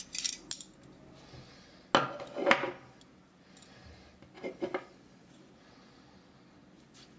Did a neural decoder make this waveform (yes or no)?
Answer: no